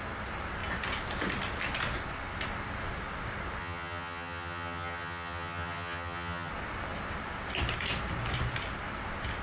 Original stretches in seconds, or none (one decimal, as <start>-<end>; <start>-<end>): 0.0-3.6; 6.5-9.4